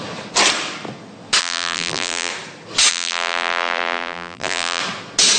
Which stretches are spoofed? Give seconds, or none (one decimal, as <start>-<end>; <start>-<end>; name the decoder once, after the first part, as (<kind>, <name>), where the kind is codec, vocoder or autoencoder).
1.4-2.3 (vocoder, BigVGAN v2); 2.9-4.8